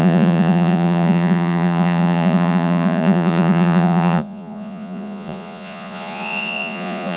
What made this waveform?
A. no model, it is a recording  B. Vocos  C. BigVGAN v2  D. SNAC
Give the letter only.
B